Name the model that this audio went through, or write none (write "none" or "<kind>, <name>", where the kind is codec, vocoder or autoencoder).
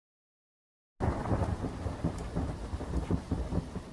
none